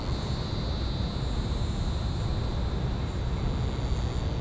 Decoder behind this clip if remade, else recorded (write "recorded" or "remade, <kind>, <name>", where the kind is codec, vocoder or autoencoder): recorded